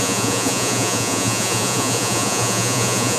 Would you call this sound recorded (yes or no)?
no